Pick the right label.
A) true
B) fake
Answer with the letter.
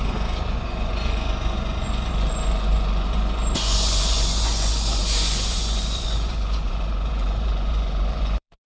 B